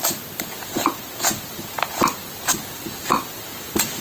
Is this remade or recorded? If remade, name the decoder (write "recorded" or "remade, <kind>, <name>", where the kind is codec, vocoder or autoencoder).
recorded